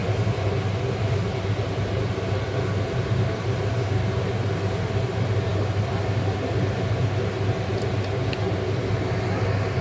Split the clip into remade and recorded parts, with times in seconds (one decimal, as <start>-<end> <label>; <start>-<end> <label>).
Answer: 0.0-9.8 recorded